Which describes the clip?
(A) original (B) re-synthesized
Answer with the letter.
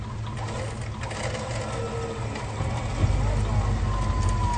A